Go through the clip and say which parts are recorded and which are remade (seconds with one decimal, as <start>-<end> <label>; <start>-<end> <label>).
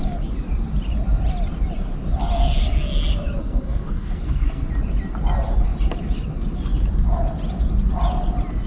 0.0-3.4 recorded; 3.4-4.7 remade; 4.7-8.7 recorded